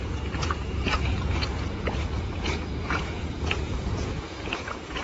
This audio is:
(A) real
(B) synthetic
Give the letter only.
B